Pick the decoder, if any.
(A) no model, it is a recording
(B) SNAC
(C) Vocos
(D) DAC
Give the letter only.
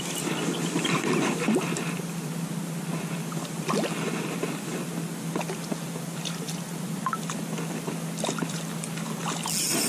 A